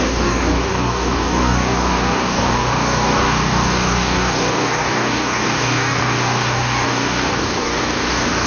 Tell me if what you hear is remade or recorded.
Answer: remade